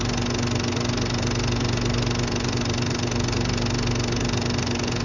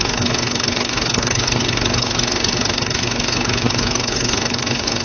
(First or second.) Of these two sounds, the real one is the first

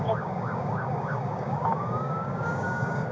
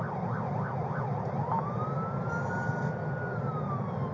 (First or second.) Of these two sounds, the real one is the second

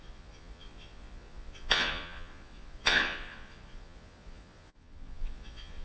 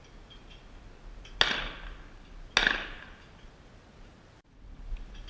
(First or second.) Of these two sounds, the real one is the second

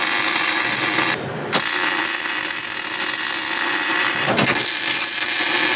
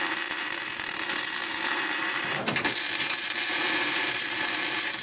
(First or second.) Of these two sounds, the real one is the first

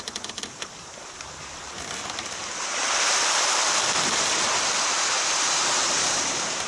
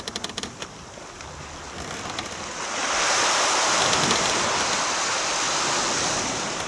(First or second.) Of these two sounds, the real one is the second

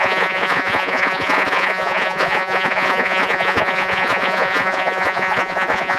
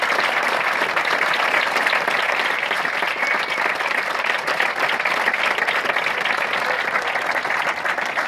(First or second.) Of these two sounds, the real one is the second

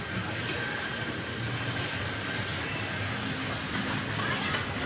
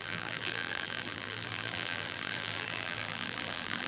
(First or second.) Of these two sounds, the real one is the first